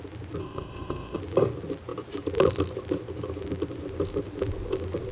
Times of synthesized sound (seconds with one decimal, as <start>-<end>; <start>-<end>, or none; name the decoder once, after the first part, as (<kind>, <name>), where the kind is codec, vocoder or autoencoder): 0.4-1.2 (codec, ZipCodec)